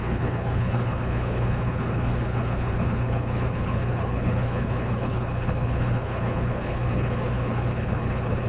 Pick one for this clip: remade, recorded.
remade